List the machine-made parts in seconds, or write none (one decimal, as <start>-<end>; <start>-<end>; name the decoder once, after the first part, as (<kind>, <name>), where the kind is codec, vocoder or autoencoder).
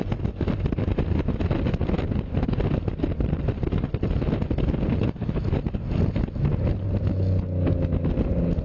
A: none